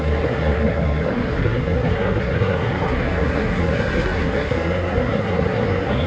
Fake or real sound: fake